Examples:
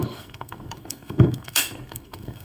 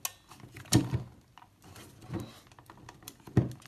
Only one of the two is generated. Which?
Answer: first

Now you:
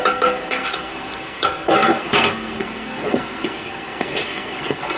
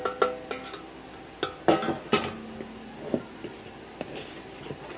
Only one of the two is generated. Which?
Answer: first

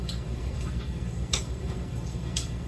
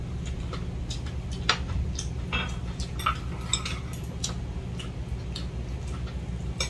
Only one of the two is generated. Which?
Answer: first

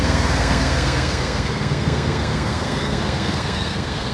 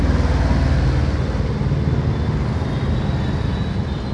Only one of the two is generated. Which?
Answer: first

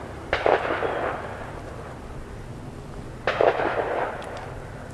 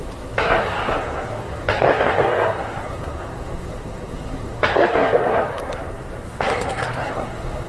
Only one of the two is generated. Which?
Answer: second